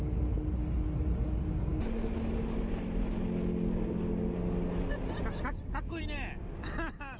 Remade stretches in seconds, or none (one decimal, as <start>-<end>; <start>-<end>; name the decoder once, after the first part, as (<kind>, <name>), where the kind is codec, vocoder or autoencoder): none